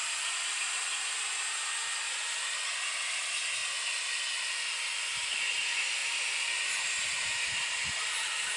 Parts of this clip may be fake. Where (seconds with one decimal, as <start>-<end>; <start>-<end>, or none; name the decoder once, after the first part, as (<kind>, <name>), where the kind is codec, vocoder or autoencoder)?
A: none